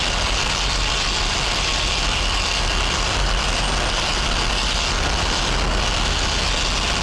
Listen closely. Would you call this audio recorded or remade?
recorded